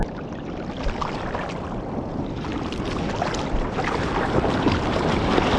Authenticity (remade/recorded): recorded